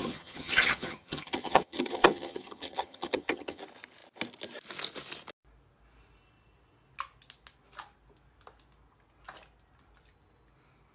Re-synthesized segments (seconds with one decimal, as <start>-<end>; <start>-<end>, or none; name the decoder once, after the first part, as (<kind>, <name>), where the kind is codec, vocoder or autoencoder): 0.0-3.6 (vocoder, HiFi-GAN)